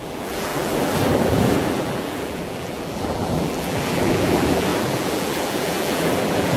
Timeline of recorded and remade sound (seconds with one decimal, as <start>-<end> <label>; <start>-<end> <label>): 0.0-6.6 remade